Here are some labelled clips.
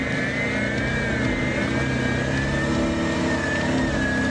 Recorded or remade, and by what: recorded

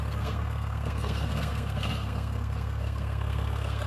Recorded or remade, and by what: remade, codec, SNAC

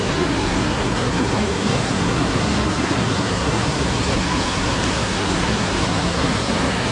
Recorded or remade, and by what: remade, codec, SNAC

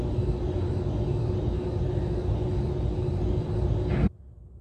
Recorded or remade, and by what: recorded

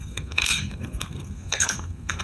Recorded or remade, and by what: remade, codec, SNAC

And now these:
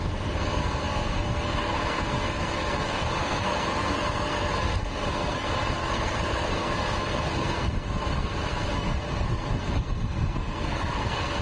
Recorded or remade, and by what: remade, codec, SNAC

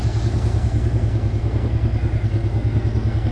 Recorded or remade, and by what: remade, codec, SNAC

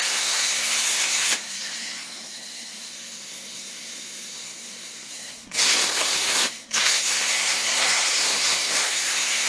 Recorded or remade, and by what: remade, codec, SNAC